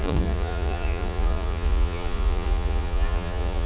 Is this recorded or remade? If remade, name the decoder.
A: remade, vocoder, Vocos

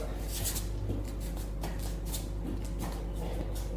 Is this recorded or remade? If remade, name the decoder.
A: recorded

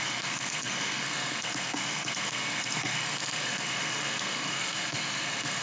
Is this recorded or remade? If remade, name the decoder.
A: remade, codec, SNAC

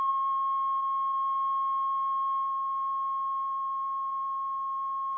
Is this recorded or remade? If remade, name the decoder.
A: recorded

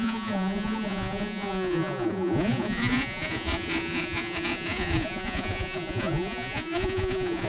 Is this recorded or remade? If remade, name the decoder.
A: remade, vocoder, Vocos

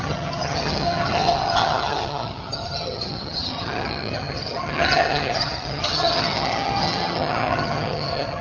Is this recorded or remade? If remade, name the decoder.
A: remade, vocoder, HiFi-GAN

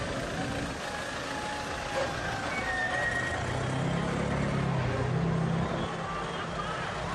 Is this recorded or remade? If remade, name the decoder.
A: recorded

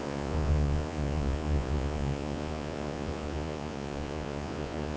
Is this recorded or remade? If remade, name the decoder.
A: remade, vocoder, Vocos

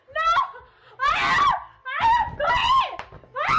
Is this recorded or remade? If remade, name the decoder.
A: recorded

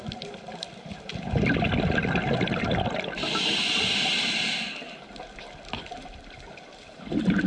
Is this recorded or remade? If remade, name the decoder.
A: recorded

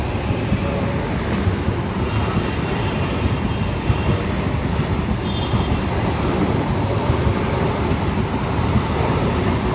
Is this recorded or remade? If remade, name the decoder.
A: recorded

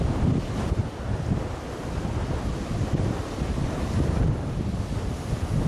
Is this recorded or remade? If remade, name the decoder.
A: recorded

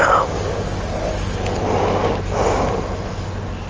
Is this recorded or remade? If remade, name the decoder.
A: recorded